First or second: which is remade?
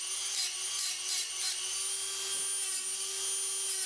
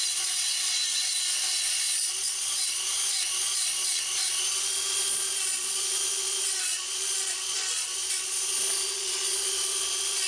second